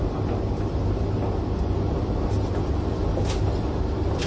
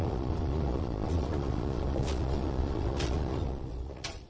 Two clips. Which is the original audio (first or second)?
first